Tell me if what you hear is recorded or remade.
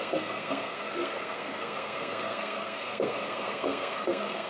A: remade